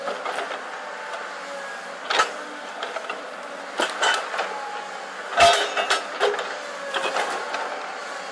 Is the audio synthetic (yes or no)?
no